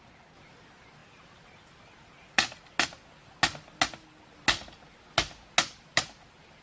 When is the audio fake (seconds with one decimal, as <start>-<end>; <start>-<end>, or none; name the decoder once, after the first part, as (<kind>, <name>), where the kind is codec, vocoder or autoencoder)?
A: none